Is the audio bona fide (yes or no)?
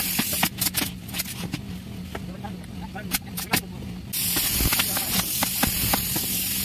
yes